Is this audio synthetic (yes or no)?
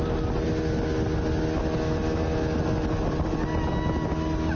no